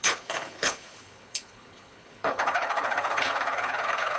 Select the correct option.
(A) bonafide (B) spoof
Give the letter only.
B